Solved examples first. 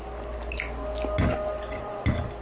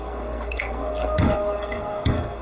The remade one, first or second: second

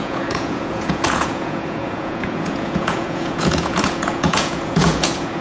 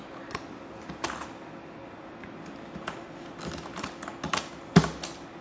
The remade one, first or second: first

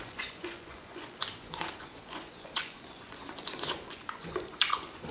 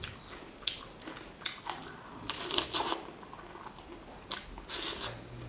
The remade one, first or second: first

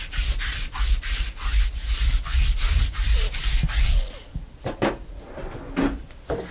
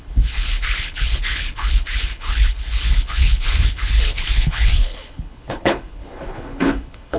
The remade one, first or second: second